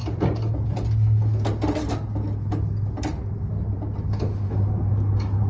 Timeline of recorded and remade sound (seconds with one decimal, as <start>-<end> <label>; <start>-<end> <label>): 0.0-5.5 recorded